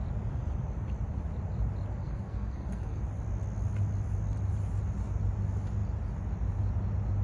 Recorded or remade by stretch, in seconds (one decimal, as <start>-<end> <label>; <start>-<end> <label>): 0.0-2.0 recorded; 2.0-3.0 remade; 3.0-7.2 recorded

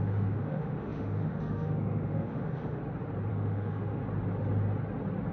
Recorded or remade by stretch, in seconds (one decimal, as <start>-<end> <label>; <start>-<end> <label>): 0.0-2.8 remade; 2.8-3.3 recorded; 3.3-4.0 remade; 4.0-5.3 recorded

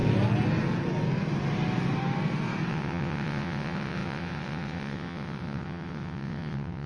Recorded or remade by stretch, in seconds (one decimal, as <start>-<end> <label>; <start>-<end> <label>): 0.0-2.7 recorded; 2.7-6.9 remade

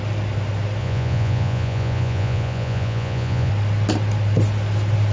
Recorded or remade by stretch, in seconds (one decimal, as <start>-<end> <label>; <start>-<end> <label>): 0.0-0.8 recorded; 0.8-3.5 remade; 3.5-5.1 recorded

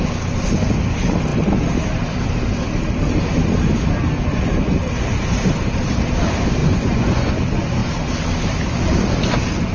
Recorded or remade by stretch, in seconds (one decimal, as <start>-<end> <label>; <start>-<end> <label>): 0.0-6.6 recorded; 6.6-7.3 remade; 7.3-9.7 recorded

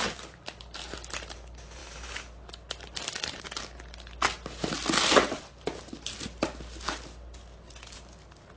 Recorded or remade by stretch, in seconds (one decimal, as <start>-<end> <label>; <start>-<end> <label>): 0.0-8.6 recorded

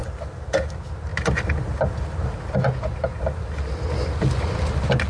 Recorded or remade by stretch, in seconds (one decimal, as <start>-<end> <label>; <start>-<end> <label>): 0.0-5.1 recorded

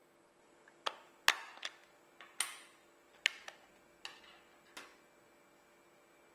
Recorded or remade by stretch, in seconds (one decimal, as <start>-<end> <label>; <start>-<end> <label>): 0.0-6.3 recorded